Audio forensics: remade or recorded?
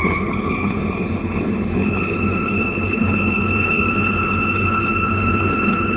remade